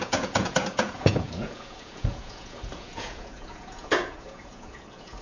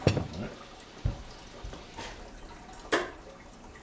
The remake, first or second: first